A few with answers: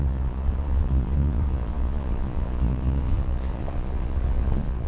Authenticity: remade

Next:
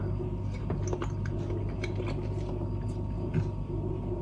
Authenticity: recorded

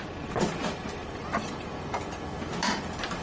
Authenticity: recorded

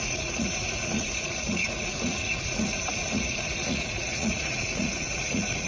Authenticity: remade